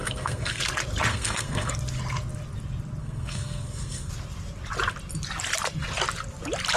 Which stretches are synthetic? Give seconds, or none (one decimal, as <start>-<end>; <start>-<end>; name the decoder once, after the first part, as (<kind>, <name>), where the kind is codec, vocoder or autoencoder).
0.0-0.6 (codec, SNAC); 1.1-1.7; 3.0-4.1